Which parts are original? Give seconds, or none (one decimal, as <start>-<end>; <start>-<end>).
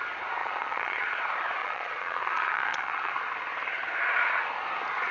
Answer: 0.0-0.4; 1.2-1.6; 3.1-5.1